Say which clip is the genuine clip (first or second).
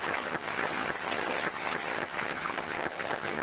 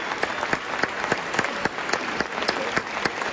second